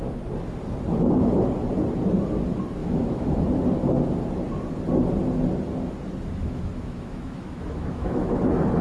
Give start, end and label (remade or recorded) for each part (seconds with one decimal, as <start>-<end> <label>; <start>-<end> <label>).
0.0-2.8 recorded; 2.8-3.4 remade; 3.4-6.4 recorded; 6.4-8.4 remade; 8.4-8.8 recorded